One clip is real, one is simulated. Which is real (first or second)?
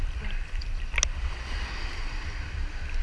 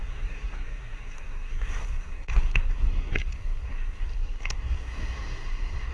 first